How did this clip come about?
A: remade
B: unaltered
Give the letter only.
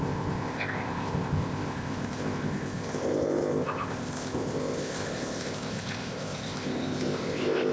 A